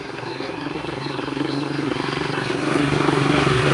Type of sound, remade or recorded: remade